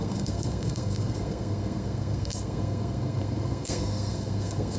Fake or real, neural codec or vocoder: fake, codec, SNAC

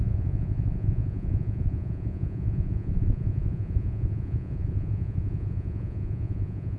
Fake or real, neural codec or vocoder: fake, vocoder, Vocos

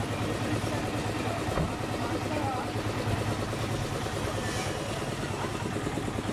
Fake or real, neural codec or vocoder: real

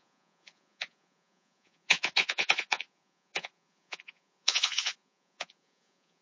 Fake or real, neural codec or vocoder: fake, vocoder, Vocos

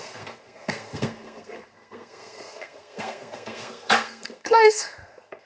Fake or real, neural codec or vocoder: fake, codec, SNAC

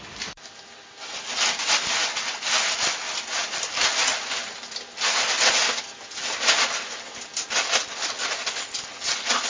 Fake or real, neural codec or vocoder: real